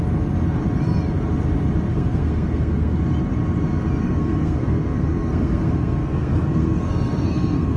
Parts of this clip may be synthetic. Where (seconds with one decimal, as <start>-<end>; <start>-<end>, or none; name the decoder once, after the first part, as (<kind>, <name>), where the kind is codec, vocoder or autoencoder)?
1.9-3.0 (codec, SNAC); 4.0-7.8